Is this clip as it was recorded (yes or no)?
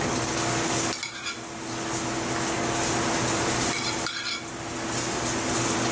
yes